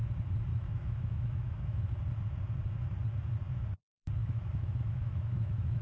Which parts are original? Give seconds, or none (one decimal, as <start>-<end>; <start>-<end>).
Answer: 0.0-0.5; 2.0-4.2

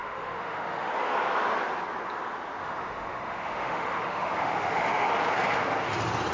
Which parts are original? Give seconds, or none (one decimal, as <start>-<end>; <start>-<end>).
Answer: 0.9-2.6; 5.1-6.3